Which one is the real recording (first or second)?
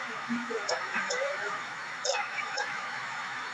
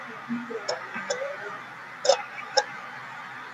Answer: second